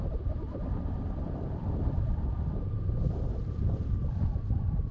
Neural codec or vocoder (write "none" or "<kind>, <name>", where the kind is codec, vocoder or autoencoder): vocoder, BigVGAN v2